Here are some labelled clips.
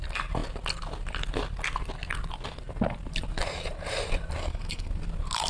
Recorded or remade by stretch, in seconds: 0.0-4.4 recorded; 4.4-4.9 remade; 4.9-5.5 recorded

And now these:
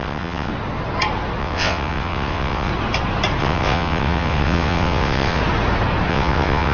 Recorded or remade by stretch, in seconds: 0.0-0.5 remade; 0.5-1.4 recorded; 1.4-2.7 remade; 2.7-3.4 recorded; 3.4-5.4 remade; 5.4-6.1 recorded; 6.1-6.7 remade

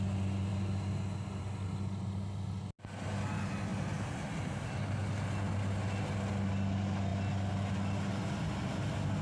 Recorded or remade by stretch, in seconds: 0.0-9.2 recorded